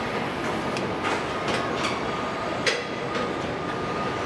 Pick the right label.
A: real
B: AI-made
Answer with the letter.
A